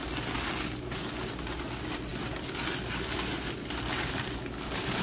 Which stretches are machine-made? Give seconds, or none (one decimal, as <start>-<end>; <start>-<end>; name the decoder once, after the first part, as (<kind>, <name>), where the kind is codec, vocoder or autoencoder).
none